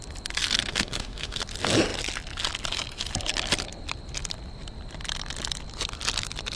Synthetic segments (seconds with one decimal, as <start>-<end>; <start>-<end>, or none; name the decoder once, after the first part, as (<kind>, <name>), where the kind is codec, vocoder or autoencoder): 0.7-1.4 (autoencoder, DAC-VAE)